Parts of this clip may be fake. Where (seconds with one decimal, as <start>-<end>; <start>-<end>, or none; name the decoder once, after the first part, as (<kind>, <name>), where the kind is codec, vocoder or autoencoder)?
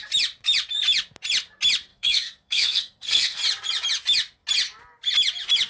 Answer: 1.9-3.4 (codec, SNAC)